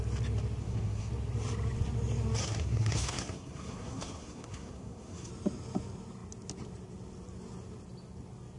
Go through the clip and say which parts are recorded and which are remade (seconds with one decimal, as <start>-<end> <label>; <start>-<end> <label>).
0.0-0.6 recorded; 0.6-1.1 remade; 1.1-2.4 recorded; 2.4-5.3 remade; 5.3-8.6 recorded